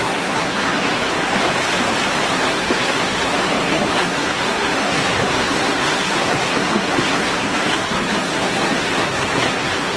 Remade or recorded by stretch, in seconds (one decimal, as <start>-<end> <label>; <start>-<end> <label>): 0.0-1.3 remade; 1.3-2.3 recorded; 2.3-10.0 remade